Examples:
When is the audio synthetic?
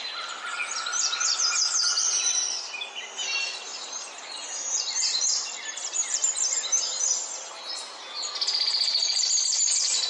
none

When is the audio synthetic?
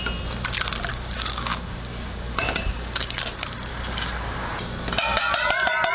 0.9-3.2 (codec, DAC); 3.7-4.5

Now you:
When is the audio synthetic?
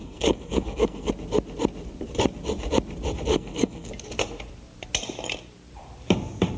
0.0-1.1 (codec, SNAC); 3.3-3.9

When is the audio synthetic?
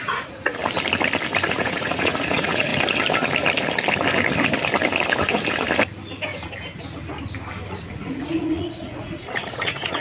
0.0-0.6 (vocoder, Vocos); 1.5-2.7; 7.7-10.0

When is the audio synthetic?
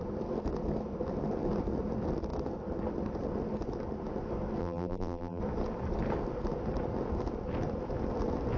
4.6-5.4 (vocoder, BigVGAN v2)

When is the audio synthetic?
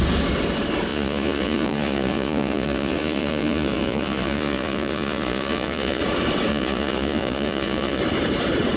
0.9-6.0 (vocoder, Vocos); 6.5-8.0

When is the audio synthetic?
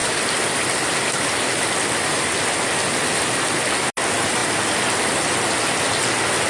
none